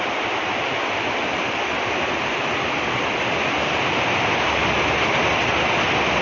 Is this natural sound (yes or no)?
yes